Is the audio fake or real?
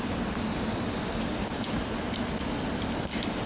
real